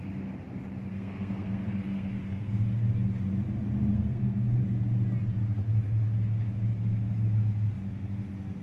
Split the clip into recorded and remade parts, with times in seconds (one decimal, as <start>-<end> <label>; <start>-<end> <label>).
0.0-0.9 recorded; 0.9-2.6 remade; 2.6-3.9 recorded; 3.9-4.6 remade; 4.6-8.6 recorded